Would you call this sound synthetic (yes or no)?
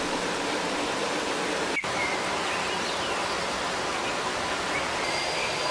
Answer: no